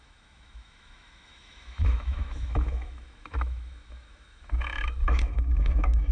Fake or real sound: fake